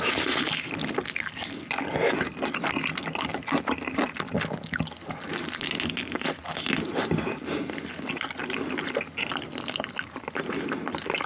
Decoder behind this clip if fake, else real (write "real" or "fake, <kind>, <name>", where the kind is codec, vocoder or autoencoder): real